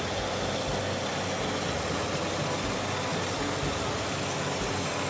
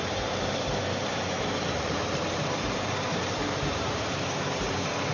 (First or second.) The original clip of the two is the first